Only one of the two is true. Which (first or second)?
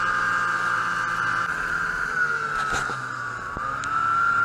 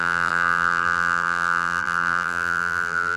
first